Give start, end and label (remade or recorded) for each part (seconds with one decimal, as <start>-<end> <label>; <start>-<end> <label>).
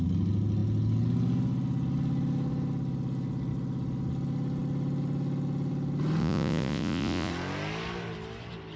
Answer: 0.0-6.2 recorded; 6.2-7.3 remade; 7.3-8.8 recorded